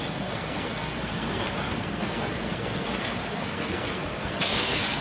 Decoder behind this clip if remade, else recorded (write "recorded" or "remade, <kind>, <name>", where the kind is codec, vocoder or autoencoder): remade, codec, SNAC